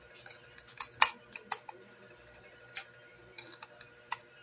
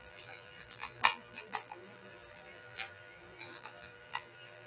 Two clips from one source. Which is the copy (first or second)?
second